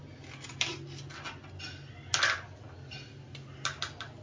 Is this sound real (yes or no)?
yes